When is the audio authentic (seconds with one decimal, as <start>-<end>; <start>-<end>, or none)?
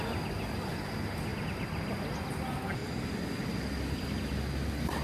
0.0-5.0